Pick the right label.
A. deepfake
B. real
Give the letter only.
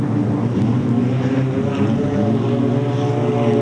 B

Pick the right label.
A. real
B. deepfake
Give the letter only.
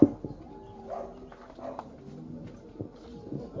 A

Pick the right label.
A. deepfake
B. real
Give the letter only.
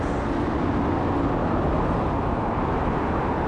B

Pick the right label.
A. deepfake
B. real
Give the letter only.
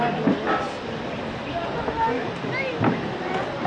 B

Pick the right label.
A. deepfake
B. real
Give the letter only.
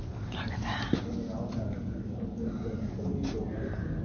B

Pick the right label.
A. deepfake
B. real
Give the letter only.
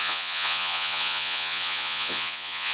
A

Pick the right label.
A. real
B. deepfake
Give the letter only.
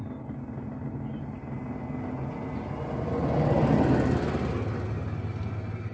A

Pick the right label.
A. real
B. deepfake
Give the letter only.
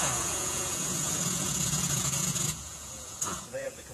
B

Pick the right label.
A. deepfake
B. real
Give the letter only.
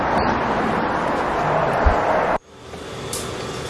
B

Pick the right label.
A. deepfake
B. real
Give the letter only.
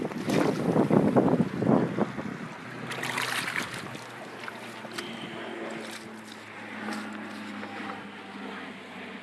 B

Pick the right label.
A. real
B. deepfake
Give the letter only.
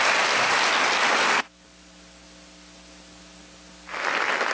A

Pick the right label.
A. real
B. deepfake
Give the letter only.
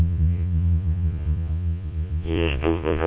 B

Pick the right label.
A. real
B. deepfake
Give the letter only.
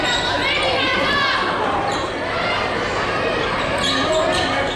A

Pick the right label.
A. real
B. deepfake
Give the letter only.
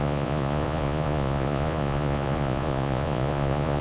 B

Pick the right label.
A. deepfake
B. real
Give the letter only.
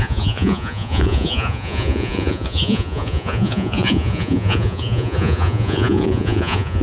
A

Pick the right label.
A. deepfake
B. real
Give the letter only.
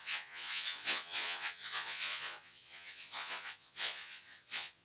A